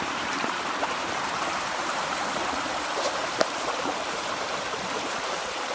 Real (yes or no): no